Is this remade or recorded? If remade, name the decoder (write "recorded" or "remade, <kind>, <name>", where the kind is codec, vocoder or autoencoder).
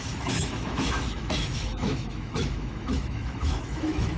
remade, autoencoder, DAC-VAE